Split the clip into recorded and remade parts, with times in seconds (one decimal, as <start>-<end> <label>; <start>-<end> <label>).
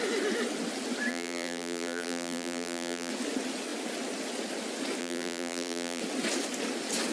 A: 0.0-1.1 recorded; 1.1-3.1 remade; 3.1-5.0 recorded; 5.0-6.0 remade; 6.0-7.1 recorded